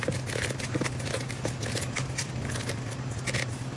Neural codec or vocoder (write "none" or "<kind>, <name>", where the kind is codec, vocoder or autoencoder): none